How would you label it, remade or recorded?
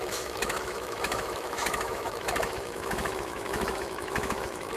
remade